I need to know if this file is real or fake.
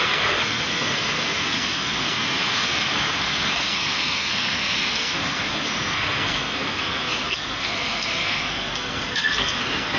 fake